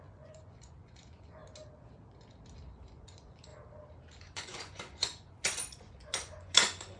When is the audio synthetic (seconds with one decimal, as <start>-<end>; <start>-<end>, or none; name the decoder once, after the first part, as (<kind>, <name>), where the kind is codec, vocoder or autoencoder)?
0.0-1.4 (vocoder, Vocos); 2.9-3.5; 4.2-7.0